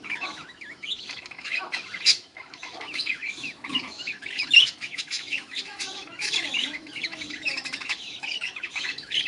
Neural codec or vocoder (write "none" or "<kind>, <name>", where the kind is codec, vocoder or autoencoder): autoencoder, DAC-VAE